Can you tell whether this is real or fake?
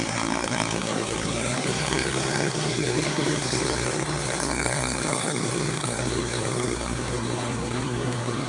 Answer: fake